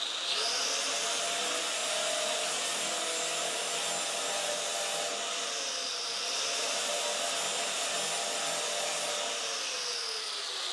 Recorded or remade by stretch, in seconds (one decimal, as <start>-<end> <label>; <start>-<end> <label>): 0.0-10.7 recorded